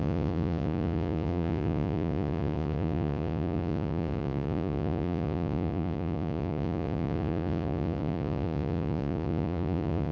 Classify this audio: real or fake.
fake